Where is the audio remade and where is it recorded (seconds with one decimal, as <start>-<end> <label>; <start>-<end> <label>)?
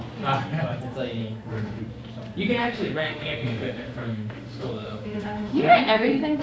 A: 0.0-1.2 recorded; 1.2-1.8 remade; 1.8-2.6 recorded; 2.6-6.4 remade